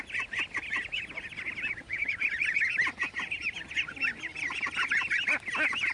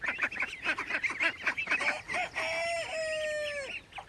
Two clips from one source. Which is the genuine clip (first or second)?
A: second